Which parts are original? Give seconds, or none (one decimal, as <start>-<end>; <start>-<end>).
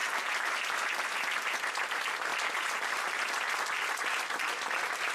0.0-5.1